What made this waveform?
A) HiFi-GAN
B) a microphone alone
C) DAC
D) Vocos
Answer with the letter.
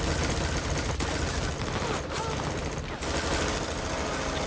B